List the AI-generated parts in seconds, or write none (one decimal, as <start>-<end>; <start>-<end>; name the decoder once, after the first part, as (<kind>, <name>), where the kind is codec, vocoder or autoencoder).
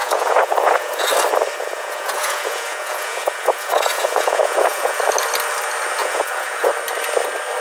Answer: 0.0-1.1 (vocoder, Vocos); 1.6-5.0; 6.0-6.7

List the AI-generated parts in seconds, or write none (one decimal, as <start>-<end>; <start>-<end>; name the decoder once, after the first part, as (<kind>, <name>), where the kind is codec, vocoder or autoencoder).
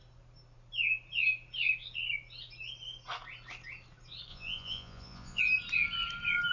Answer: 4.3-5.4 (vocoder, Vocos)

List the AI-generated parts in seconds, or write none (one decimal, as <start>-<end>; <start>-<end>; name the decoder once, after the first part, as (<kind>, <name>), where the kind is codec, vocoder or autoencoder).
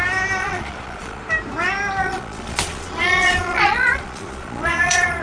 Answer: 0.4-1.2 (vocoder, Vocos); 2.0-5.2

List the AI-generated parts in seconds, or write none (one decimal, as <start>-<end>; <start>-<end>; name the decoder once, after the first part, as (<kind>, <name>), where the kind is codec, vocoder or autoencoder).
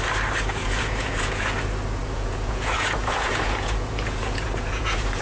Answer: 0.6-1.5 (vocoder, Vocos); 2.0-5.2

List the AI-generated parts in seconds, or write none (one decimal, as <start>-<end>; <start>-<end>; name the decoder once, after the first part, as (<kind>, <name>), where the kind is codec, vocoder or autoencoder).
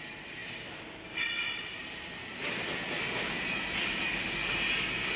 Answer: none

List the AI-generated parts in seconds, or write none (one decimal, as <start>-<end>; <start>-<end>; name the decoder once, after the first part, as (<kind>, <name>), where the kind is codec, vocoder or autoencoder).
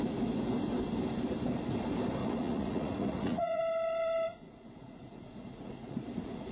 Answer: 2.2-3.6 (vocoder, Vocos); 4.3-6.5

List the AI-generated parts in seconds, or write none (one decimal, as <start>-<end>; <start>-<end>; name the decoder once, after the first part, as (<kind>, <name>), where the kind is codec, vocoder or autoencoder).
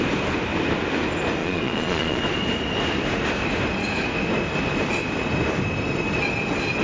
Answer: 1.4-2.2 (vocoder, Vocos)